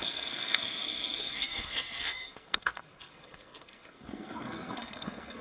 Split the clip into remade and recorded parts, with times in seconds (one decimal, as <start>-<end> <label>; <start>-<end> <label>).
0.0-5.4 remade